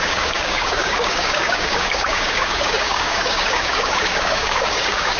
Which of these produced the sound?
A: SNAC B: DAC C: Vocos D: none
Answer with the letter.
B